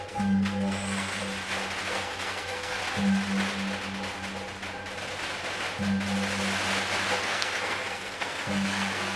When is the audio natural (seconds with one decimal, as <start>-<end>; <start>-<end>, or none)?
1.2-1.8; 2.8-7.2